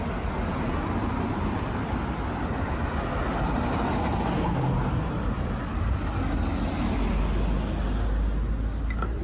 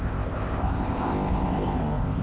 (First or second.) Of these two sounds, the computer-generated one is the second